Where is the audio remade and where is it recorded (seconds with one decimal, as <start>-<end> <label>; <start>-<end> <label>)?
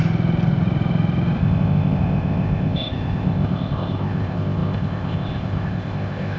0.0-1.4 recorded; 1.4-6.4 remade